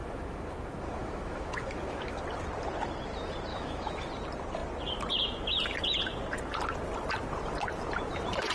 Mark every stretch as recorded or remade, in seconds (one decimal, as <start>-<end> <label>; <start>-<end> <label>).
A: 0.0-2.2 remade; 2.2-3.5 recorded; 3.5-4.1 remade; 4.1-8.5 recorded